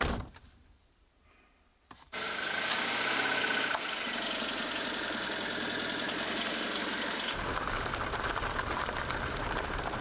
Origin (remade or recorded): remade